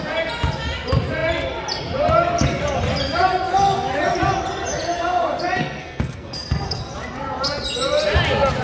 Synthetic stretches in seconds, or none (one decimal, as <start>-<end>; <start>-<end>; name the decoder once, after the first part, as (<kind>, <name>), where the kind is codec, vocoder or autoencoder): 5.6-6.8 (codec, SNAC)